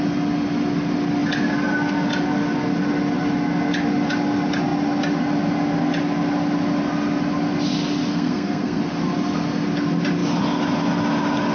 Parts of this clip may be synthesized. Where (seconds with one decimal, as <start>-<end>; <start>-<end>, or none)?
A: 8.1-8.8